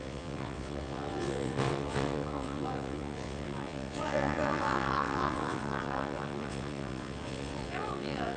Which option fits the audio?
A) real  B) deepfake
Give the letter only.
B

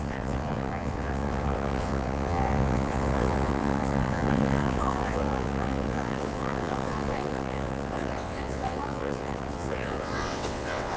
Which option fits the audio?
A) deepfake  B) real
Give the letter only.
A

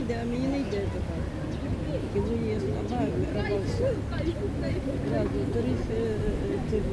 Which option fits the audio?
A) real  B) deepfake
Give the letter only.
A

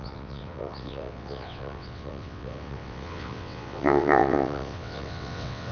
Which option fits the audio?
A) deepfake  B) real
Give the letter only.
A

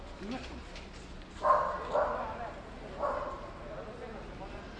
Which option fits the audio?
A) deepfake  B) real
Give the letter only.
B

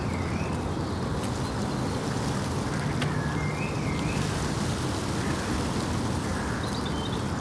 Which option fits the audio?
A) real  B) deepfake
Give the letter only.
A